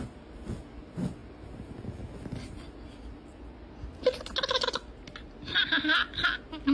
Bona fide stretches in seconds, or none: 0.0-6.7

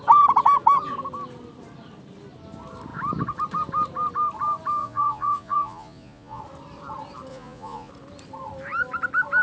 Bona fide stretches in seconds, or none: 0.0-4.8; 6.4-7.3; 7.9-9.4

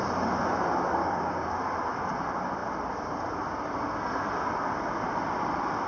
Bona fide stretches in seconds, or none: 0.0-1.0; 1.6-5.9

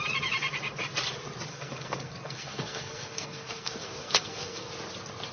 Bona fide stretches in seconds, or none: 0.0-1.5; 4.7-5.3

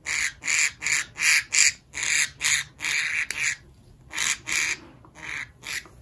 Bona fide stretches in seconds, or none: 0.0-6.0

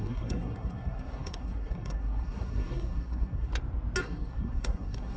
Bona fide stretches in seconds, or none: 3.5-4.0